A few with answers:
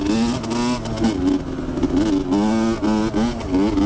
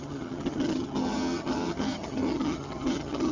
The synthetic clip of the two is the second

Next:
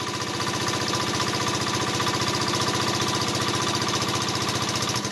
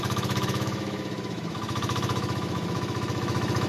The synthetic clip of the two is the second